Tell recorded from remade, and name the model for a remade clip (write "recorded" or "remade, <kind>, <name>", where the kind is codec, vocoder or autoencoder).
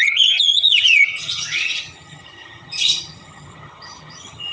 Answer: remade, vocoder, HiFi-GAN